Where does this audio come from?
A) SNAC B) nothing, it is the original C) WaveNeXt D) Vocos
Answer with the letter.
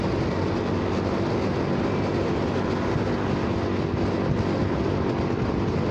B